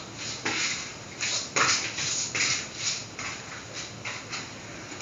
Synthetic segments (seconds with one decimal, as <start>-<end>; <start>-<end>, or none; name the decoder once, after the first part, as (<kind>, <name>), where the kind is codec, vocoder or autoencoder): none